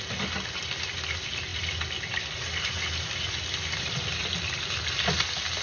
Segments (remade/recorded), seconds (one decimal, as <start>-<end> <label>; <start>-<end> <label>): 0.0-5.6 recorded